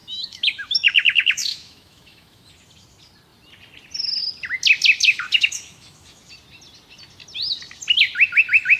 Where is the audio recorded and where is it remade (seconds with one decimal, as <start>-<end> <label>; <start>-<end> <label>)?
0.0-2.5 remade; 2.5-5.0 recorded; 5.0-6.2 remade; 6.2-8.8 recorded